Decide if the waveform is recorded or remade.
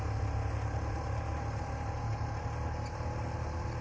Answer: recorded